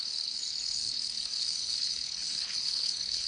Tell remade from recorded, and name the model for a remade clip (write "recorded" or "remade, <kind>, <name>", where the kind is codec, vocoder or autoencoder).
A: remade, codec, HILCodec